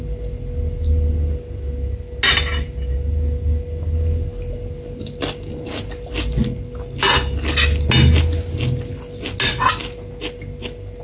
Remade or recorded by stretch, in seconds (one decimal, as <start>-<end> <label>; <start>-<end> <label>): 0.0-11.0 recorded